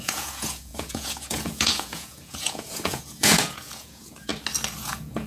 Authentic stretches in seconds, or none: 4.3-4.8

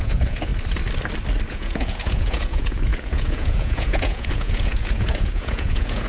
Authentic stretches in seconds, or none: 0.5-1.5

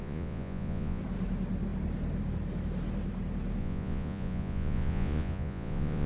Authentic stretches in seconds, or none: 1.0-3.6

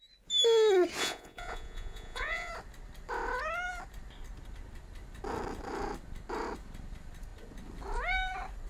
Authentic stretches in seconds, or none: 0.0-1.0; 2.5-8.7

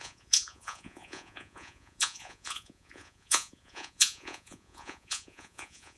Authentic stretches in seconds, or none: none

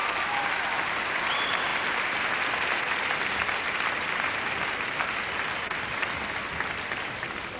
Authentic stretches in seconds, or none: 0.0-7.6